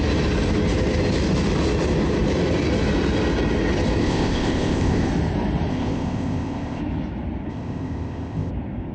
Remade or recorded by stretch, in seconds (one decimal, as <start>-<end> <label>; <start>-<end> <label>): 0.0-4.0 recorded; 4.0-5.1 remade; 5.1-5.7 recorded; 5.7-6.8 remade; 6.8-7.5 recorded; 7.5-8.5 remade; 8.5-8.9 recorded

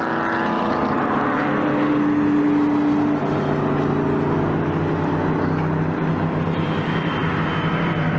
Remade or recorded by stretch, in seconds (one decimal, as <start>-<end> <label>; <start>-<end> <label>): 0.0-8.2 recorded

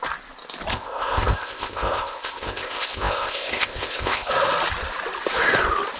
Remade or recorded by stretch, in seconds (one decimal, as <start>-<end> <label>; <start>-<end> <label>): 0.0-0.7 recorded; 0.7-4.3 remade; 4.3-6.0 recorded

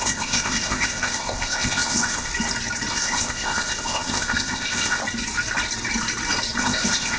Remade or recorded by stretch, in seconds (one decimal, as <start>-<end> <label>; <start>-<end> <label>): 0.0-2.3 remade; 2.3-2.9 recorded; 2.9-5.0 remade; 5.0-6.6 recorded; 6.6-7.2 remade